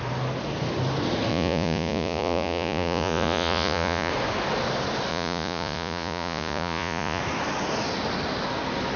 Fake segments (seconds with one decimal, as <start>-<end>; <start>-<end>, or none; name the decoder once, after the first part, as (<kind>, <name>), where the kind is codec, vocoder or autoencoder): 1.3-4.1 (vocoder, Vocos); 5.1-7.2